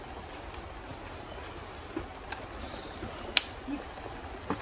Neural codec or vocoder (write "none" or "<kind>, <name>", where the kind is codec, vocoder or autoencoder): none